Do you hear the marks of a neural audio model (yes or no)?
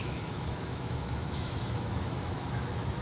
yes